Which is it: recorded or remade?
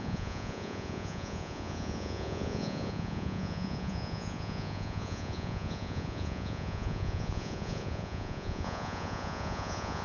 remade